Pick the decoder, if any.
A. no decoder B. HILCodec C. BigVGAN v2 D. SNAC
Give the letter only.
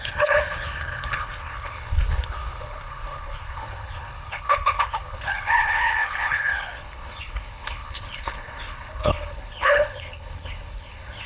B